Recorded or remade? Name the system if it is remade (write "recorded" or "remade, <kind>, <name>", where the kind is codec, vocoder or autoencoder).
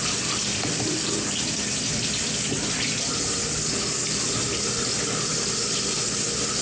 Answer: recorded